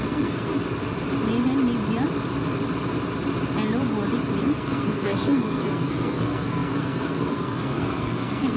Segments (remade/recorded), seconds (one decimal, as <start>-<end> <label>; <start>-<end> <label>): 0.0-0.5 remade; 0.5-4.4 recorded; 4.4-8.6 remade